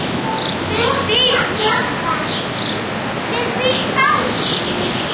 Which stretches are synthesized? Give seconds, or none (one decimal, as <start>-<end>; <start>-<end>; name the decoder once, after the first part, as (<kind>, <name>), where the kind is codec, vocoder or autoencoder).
none

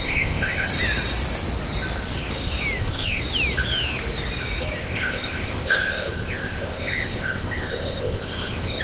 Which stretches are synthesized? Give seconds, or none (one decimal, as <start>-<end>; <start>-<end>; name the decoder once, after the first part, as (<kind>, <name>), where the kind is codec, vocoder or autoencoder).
0.0-0.7 (codec, ZipCodec); 2.8-3.2; 4.8-8.8

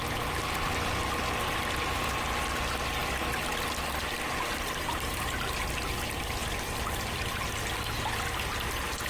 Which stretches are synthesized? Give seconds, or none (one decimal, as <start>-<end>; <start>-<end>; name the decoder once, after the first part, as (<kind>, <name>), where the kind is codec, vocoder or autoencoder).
none

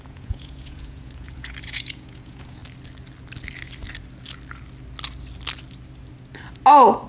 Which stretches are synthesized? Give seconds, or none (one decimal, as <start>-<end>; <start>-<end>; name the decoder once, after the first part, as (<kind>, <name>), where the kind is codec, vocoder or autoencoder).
0.0-2.6 (vocoder, Vocos)

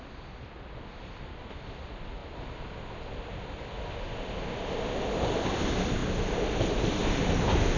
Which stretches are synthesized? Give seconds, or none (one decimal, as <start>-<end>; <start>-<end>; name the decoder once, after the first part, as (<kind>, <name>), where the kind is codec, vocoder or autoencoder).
none

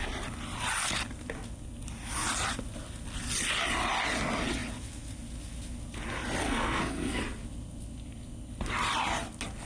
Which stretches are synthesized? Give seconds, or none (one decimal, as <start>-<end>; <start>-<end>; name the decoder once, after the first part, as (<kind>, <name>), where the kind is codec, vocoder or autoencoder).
6.4-7.2 (codec, SNAC)

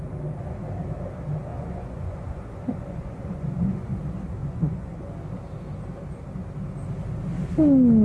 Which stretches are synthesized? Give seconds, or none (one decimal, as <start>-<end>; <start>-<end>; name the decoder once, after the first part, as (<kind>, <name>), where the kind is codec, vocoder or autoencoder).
1.5-4.0 (vocoder, Vocos); 4.4-5.1